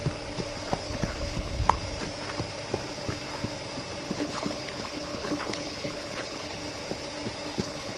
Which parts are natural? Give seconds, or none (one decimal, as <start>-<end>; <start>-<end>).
0.0-0.8; 1.8-4.1; 6.6-7.6